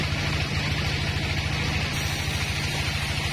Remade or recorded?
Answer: recorded